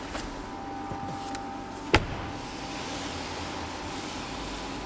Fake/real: real